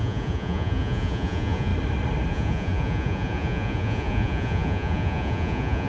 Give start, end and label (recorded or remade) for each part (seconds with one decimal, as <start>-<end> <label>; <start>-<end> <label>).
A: 0.0-1.7 remade; 1.7-2.3 recorded; 2.3-5.9 remade